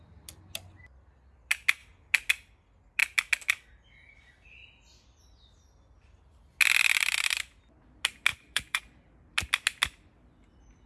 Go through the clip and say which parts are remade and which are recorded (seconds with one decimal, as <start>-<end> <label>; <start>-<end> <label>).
0.0-8.3 recorded; 8.3-8.8 remade; 8.8-10.9 recorded